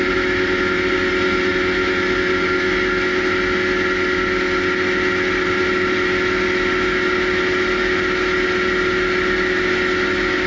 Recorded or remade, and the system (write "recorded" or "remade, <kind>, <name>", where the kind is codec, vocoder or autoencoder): recorded